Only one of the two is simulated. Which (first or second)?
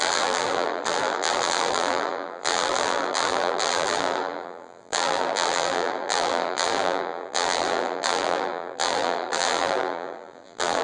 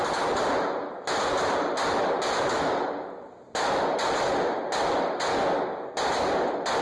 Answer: first